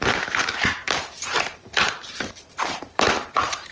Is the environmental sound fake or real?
fake